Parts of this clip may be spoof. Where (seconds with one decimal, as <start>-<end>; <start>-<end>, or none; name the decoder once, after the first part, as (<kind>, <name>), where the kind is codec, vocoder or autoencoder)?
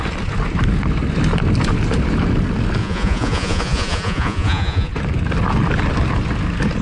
2.8-4.9 (vocoder, Vocos)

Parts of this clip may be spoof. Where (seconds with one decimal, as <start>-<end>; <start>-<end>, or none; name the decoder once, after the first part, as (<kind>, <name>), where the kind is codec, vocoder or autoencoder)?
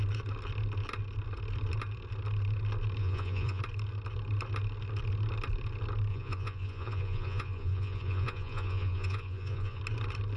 3.0-3.6 (vocoder, Vocos); 6.1-9.8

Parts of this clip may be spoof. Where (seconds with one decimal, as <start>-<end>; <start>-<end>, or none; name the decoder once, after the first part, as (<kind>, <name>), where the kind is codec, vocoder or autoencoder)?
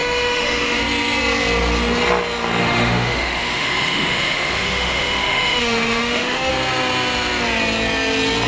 0.0-0.8 (autoencoder, DAC-VAE); 2.6-6.5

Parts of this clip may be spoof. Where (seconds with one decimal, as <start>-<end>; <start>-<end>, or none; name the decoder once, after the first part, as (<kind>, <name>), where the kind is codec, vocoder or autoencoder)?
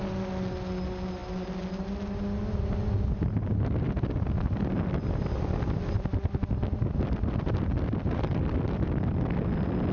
none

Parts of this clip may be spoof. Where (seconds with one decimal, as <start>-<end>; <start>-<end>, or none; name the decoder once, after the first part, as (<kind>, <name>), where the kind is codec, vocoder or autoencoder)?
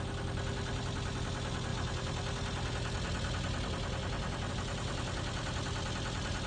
none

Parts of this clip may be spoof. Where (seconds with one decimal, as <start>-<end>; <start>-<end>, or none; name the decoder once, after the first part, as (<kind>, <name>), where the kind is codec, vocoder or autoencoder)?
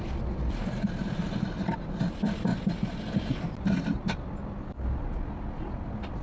none